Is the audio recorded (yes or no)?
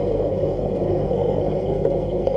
no